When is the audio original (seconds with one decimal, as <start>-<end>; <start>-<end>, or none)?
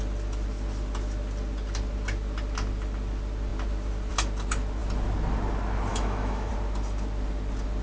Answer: 0.0-5.9; 6.5-7.8